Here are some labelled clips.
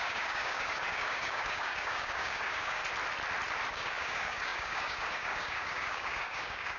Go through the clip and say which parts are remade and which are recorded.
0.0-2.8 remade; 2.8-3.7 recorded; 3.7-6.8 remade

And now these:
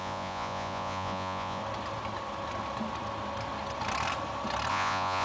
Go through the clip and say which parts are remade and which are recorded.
0.0-1.6 remade; 1.6-4.7 recorded; 4.7-5.2 remade